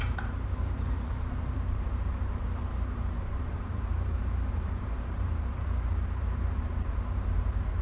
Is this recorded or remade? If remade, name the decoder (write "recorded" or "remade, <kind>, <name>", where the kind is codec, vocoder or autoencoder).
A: remade, vocoder, BigVGAN v2